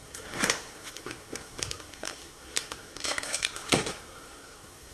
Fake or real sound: fake